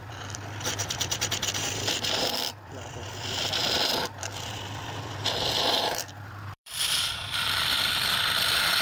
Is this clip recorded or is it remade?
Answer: remade